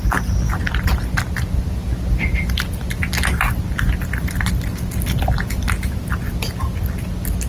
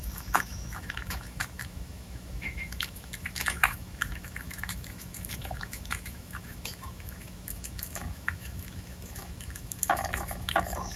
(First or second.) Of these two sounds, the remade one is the second